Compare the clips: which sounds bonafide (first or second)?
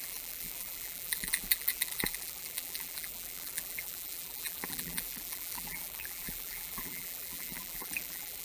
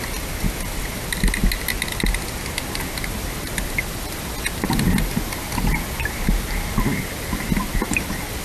second